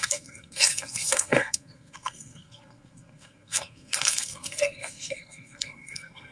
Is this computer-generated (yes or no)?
yes